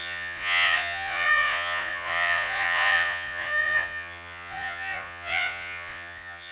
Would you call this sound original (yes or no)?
no